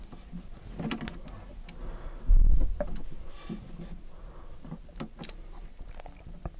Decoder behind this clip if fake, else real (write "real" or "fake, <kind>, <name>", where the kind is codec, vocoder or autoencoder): real